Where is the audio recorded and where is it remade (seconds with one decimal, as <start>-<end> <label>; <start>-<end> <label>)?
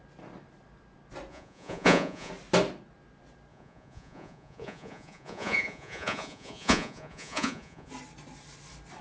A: 0.0-1.3 recorded; 1.3-2.3 remade; 2.3-3.5 recorded; 3.5-7.9 remade; 7.9-9.0 recorded